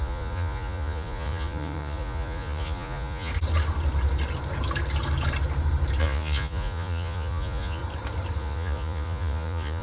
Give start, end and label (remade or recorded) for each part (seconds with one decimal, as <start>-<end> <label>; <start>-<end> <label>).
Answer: 0.0-3.3 remade; 3.3-6.0 recorded; 6.0-7.8 remade; 7.8-8.4 recorded; 8.4-9.8 remade